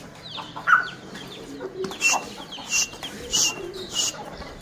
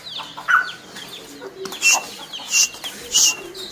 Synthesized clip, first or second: first